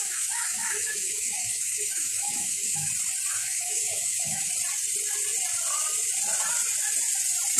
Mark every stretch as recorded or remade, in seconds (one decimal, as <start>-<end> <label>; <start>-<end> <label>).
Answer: 0.0-2.9 remade; 2.9-3.4 recorded; 3.4-4.5 remade; 4.5-7.6 recorded